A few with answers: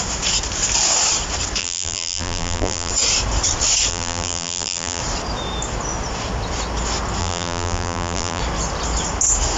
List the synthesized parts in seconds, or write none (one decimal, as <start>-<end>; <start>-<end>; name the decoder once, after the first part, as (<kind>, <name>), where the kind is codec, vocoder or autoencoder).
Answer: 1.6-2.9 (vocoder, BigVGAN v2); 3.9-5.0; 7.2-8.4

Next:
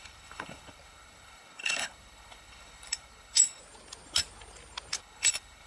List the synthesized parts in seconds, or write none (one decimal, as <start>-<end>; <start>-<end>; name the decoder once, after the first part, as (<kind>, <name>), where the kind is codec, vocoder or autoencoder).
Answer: 0.0-3.6 (codec, HILCodec); 5.0-5.7

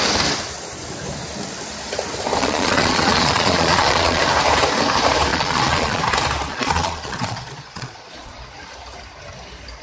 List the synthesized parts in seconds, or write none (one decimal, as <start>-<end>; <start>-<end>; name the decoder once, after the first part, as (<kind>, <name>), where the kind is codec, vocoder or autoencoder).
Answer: 2.4-4.2 (vocoder, Vocos); 5.3-6.0; 6.5-8.4

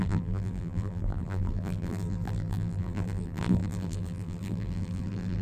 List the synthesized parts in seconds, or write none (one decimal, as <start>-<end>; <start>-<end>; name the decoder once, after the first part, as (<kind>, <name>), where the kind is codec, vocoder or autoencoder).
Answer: 0.0-5.4 (vocoder, BigVGAN v2)